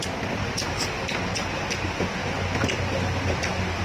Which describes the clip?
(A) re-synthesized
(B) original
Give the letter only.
B